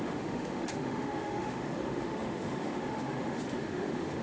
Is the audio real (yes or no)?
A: no